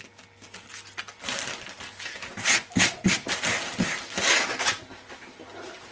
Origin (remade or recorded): recorded